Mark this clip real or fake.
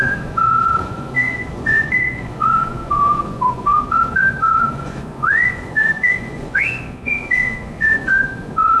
fake